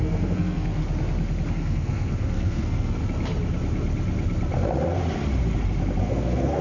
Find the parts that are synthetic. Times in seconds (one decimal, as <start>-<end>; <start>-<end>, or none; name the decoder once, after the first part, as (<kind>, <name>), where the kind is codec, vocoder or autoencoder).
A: 0.0-0.8 (codec, SNAC); 1.5-3.0; 6.0-6.6